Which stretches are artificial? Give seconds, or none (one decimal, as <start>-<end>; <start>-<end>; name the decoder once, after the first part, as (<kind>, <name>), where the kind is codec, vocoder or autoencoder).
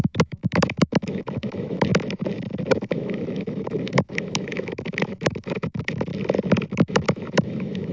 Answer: 0.0-1.9 (autoencoder, DAC-VAE); 2.7-6.1; 6.7-7.9